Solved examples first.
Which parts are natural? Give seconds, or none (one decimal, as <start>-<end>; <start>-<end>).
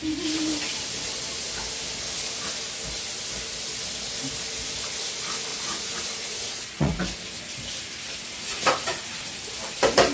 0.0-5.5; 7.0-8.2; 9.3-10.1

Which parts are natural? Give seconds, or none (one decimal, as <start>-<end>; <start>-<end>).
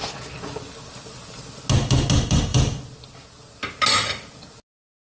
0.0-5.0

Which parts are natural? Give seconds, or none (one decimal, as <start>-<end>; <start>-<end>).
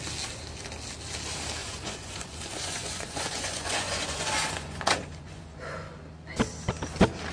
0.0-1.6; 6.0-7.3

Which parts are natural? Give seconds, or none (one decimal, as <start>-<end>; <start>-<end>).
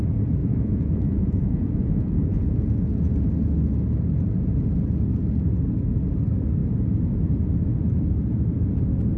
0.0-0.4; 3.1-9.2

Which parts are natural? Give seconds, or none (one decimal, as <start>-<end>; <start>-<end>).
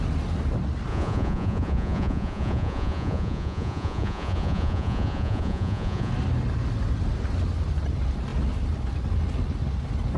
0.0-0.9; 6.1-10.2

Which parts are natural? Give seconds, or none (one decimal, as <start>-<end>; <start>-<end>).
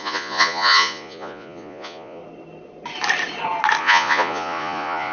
2.2-3.8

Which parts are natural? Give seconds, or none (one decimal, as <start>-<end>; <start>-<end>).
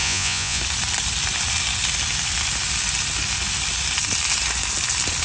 0.6-5.2